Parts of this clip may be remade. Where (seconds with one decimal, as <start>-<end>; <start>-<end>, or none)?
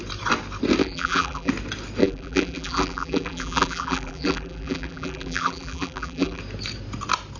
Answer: 0.8-1.5; 2.0-6.4